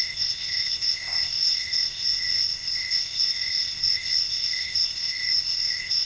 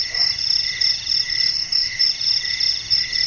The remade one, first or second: first